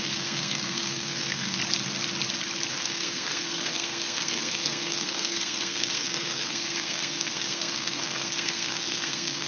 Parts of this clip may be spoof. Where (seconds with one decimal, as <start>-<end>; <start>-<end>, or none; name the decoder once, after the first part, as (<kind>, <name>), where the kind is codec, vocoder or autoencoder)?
0.0-1.6 (codec, SNAC); 2.7-9.5